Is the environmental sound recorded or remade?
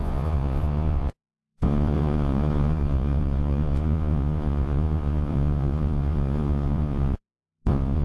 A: remade